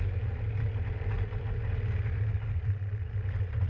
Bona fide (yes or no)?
yes